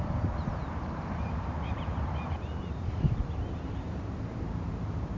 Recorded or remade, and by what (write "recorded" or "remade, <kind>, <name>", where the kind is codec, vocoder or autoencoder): remade, vocoder, BigVGAN v2